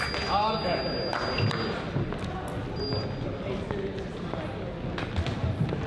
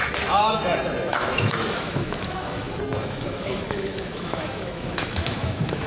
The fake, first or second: second